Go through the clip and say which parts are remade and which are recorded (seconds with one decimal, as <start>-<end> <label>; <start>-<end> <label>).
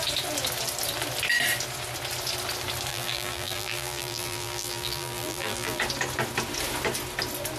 0.0-2.9 recorded; 2.9-5.8 remade; 5.8-7.6 recorded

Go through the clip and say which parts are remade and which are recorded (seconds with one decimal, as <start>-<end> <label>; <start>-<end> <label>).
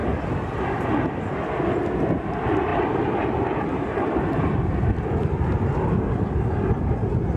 0.0-2.7 recorded; 2.7-6.8 remade; 6.8-7.4 recorded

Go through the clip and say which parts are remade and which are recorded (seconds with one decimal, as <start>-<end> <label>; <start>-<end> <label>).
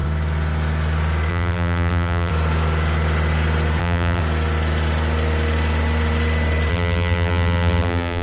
0.0-1.3 recorded; 1.3-2.3 remade; 2.3-3.8 recorded; 3.8-4.2 remade; 4.2-6.7 recorded; 6.7-8.2 remade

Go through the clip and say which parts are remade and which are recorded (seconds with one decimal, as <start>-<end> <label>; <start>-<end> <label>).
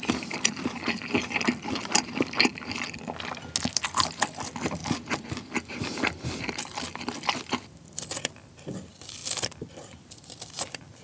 0.0-2.5 remade; 2.5-3.7 recorded; 3.7-4.8 remade; 4.8-6.4 recorded; 6.4-9.2 remade; 9.2-9.7 recorded; 9.7-11.0 remade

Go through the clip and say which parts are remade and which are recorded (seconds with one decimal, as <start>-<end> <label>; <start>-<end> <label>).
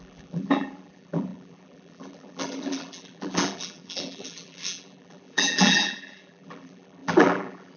0.0-7.8 remade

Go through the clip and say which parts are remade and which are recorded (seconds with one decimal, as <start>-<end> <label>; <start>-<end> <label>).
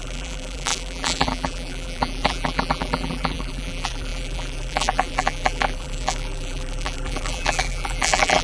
0.0-8.4 remade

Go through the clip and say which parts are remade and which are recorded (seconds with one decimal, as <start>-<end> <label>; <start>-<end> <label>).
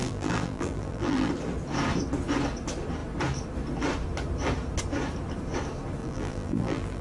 0.0-1.3 remade; 1.3-6.0 recorded; 6.0-7.0 remade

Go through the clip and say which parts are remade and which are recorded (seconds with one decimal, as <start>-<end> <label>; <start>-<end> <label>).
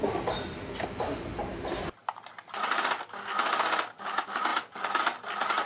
0.0-1.5 recorded; 1.5-2.6 remade; 2.6-4.5 recorded; 4.5-5.0 remade; 5.0-5.7 recorded